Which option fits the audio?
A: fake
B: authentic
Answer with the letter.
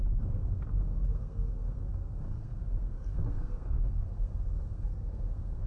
A